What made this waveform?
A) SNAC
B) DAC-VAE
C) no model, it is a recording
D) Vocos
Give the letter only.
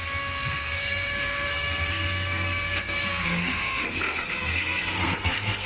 A